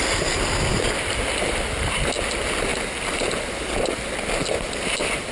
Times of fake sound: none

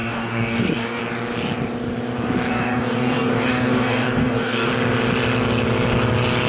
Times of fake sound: 0.0-1.0 (codec, DAC); 2.5-4.7

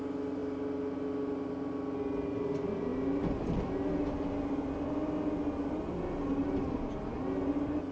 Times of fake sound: none

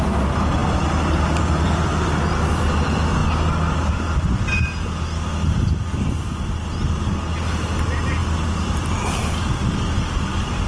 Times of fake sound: none

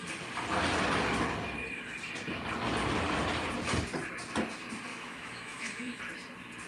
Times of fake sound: 4.9-6.0 (autoencoder, DAC-VAE)

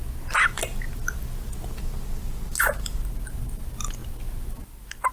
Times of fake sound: none

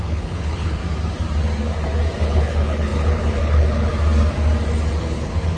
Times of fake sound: 0.0-0.8 (codec, HILCodec); 2.2-3.9; 5.0-5.6

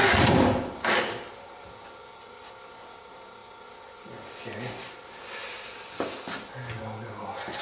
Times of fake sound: none